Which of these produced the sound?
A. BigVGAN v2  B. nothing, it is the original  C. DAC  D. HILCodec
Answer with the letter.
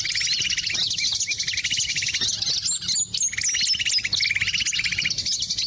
B